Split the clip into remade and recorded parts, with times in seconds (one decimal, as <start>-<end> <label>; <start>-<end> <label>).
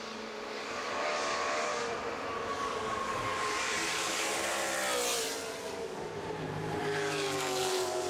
0.0-1.7 remade; 1.7-2.5 recorded; 2.5-4.5 remade; 4.5-5.6 recorded; 5.6-6.1 remade; 6.1-6.8 recorded; 6.8-8.1 remade